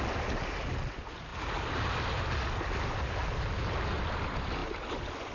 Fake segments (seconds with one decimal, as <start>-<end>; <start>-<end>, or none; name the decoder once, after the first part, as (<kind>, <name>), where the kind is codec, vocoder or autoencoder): none